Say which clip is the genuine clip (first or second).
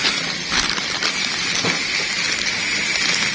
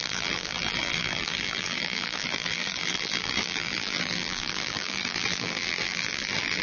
first